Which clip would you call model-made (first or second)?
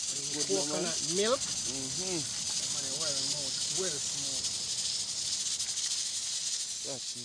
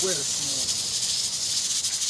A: second